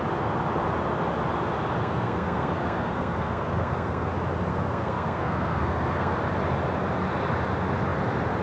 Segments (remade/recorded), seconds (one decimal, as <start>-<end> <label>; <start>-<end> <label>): 0.0-1.8 recorded; 1.8-4.1 remade; 4.1-4.5 recorded; 4.5-6.2 remade; 6.2-8.4 recorded